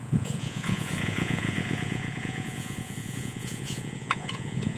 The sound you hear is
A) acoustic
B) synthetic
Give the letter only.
B